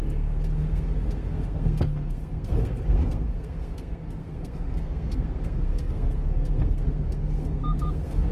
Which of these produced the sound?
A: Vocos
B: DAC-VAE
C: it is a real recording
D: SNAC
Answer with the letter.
D